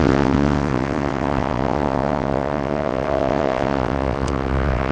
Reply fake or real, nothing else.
fake